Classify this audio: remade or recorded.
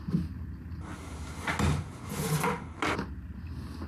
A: recorded